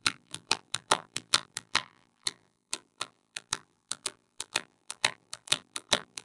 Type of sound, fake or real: fake